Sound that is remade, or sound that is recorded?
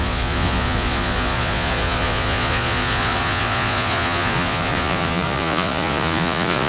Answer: remade